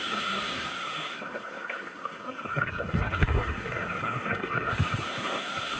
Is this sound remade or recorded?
remade